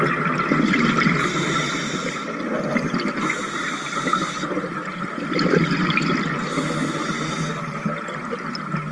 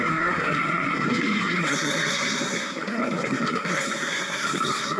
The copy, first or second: second